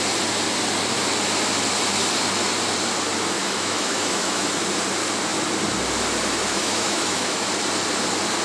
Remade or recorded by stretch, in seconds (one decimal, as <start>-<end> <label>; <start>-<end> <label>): 0.0-3.4 recorded; 3.4-4.5 remade; 4.5-6.6 recorded; 6.6-7.5 remade; 7.5-8.4 recorded